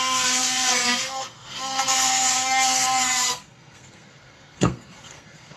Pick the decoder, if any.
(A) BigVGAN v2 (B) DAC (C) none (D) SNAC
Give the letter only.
D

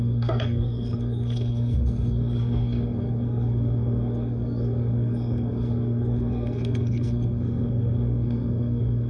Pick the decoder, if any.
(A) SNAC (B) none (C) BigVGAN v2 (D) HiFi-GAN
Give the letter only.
A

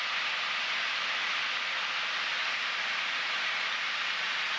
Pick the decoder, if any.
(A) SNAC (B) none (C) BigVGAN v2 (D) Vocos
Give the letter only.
B